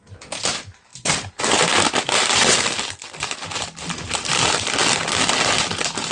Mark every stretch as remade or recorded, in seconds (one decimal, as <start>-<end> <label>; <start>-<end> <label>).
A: 0.0-6.1 recorded